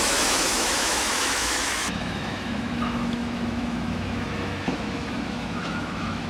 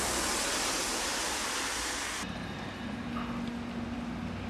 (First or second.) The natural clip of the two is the second